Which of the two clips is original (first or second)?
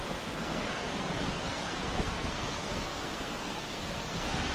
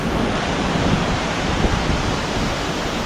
second